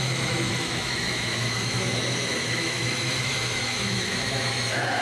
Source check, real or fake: fake